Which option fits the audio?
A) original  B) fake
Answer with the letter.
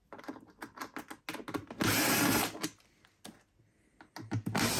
A